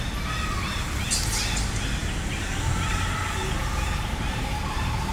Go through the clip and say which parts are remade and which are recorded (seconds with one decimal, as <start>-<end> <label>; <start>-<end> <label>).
0.0-5.1 recorded